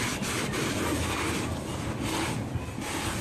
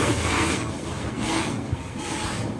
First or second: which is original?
first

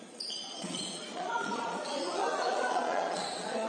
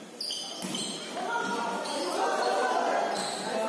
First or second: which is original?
second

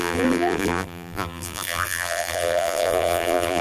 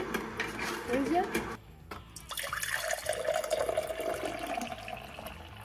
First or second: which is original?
second